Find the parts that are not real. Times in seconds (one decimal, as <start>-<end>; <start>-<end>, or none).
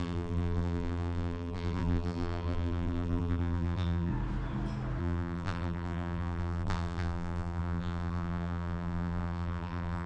0.0-4.1; 5.0-10.1